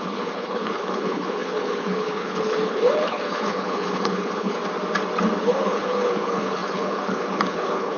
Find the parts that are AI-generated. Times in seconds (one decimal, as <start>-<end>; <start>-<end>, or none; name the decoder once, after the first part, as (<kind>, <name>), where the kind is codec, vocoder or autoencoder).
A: 0.0-4.6 (codec, HILCodec); 5.4-8.0